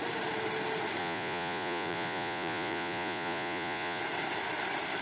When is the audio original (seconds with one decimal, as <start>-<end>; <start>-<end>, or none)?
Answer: 0.0-1.0; 4.0-5.0